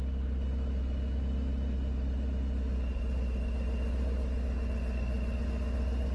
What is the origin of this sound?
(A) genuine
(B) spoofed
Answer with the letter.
A